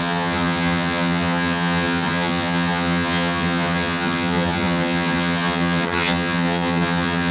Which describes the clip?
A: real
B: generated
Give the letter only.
B